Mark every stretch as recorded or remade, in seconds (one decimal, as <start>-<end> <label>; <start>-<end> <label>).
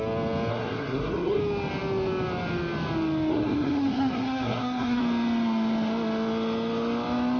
0.0-0.5 recorded; 0.5-1.4 remade; 1.4-3.3 recorded; 3.3-5.0 remade; 5.0-7.4 recorded